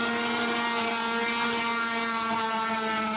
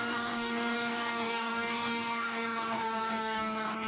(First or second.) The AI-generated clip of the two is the second